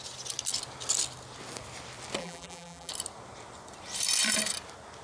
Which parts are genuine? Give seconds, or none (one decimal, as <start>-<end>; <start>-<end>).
0.0-2.2; 2.9-5.0